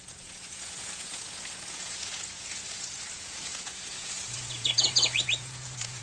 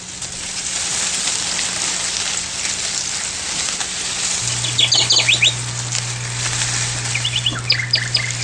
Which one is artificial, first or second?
first